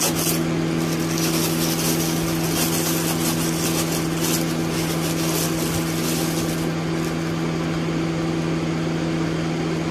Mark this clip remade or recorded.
recorded